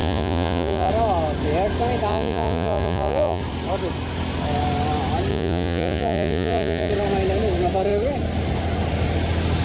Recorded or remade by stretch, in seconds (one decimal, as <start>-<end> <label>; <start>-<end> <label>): 0.0-0.9 remade; 0.9-2.1 recorded; 2.1-3.4 remade; 3.4-5.3 recorded; 5.3-6.9 remade; 6.9-9.6 recorded